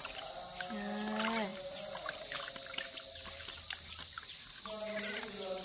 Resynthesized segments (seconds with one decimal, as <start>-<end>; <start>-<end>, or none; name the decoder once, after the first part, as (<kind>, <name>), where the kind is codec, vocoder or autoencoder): none

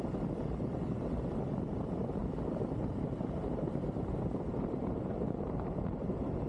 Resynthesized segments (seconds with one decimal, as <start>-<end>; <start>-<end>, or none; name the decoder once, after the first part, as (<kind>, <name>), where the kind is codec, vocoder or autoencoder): 2.2-6.1 (vocoder, BigVGAN v2)

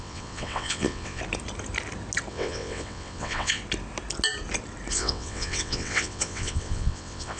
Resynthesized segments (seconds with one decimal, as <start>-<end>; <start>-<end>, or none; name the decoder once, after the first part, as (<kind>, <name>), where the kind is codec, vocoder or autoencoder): 0.0-1.2 (vocoder, WaveNeXt); 2.3-3.6; 4.9-7.4